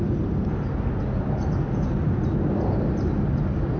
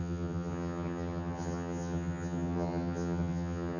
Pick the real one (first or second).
first